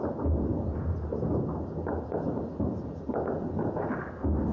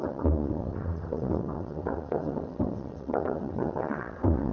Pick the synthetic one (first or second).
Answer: second